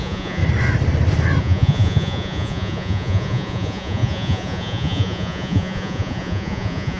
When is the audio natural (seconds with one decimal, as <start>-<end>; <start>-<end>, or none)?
0.4-1.4